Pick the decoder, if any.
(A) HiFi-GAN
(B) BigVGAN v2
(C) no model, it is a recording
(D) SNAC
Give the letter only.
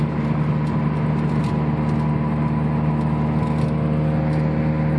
C